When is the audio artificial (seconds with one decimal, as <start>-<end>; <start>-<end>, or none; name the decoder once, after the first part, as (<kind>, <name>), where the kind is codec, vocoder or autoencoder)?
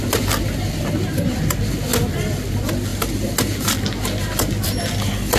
none